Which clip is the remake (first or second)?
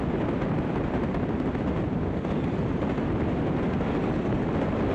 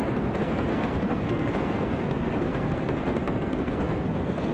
second